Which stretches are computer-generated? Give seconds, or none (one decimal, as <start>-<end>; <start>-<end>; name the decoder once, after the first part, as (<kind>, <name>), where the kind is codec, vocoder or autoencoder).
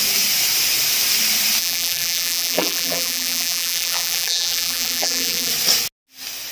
1.6-5.5 (vocoder, BigVGAN v2)